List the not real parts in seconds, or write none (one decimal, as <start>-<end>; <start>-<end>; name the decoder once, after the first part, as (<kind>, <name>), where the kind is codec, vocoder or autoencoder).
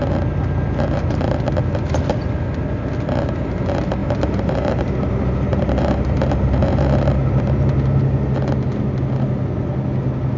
4.0-7.5 (vocoder, BigVGAN v2)